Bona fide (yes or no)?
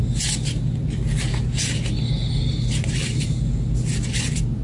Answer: yes